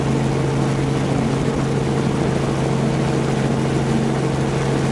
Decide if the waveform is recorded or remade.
recorded